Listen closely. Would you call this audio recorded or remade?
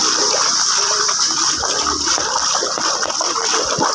recorded